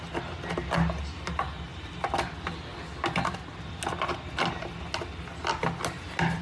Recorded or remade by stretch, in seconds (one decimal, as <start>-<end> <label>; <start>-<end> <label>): 0.0-6.4 recorded